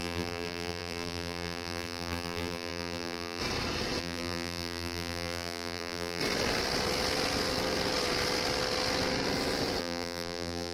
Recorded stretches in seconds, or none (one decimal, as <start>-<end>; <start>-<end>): 3.4-4.0; 6.2-9.8

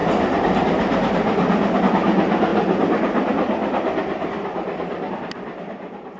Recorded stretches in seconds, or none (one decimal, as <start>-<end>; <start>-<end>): 1.8-2.5; 5.1-6.2

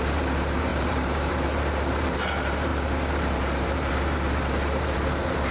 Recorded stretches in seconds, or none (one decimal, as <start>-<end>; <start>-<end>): none

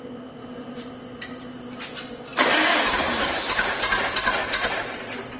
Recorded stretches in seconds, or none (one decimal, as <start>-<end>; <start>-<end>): 0.0-0.4; 0.9-1.3; 1.9-2.3; 4.1-5.4